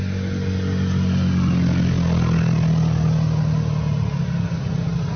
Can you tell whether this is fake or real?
real